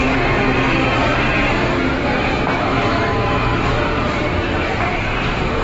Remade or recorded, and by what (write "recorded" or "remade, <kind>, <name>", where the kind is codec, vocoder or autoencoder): remade, vocoder, BigVGAN v2